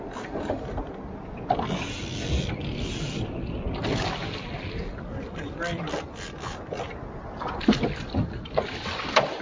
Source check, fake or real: real